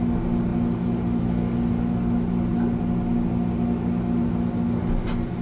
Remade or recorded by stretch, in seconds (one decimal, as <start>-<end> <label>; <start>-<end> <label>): 0.0-5.4 recorded